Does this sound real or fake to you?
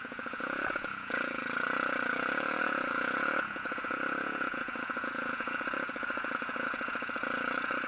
fake